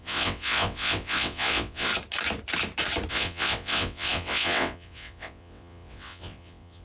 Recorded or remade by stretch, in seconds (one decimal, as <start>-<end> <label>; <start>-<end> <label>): 0.0-1.9 remade; 1.9-3.1 recorded; 3.1-6.8 remade